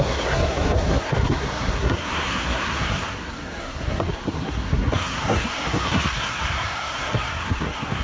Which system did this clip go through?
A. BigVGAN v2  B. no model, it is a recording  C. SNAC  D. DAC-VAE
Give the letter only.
C